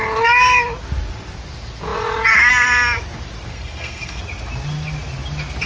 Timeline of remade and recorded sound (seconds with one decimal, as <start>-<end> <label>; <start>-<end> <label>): 0.0-3.5 recorded; 3.5-4.2 remade; 4.2-5.7 recorded